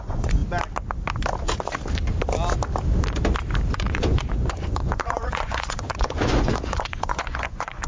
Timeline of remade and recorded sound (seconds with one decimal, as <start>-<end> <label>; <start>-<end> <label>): 0.0-0.4 remade; 0.4-3.7 recorded; 3.7-7.9 remade

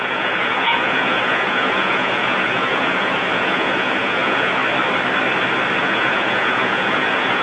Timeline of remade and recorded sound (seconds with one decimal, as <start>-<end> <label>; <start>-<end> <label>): 0.0-4.6 remade; 4.6-5.8 recorded; 5.8-7.4 remade